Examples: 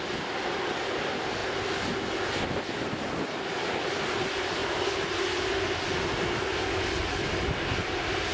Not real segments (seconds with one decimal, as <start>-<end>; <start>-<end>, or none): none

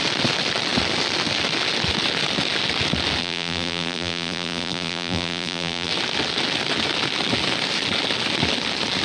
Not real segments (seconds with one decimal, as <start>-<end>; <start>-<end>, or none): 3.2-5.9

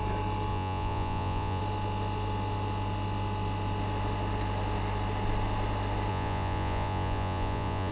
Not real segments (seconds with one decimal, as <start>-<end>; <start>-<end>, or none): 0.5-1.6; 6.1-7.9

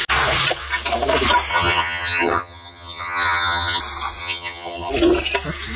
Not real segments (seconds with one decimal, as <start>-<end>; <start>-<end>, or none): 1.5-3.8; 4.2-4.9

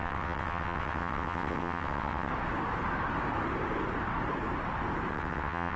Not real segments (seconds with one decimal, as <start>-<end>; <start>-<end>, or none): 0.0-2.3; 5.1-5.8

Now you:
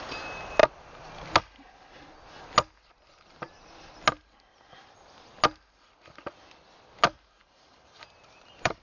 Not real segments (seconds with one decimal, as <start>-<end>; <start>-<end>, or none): 7.4-8.8

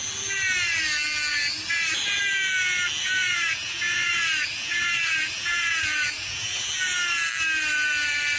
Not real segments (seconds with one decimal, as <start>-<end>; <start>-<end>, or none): 1.3-2.2; 3.0-6.7

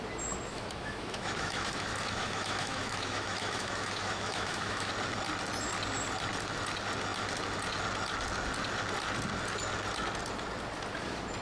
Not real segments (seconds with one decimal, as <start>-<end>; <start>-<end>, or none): 0.5-4.9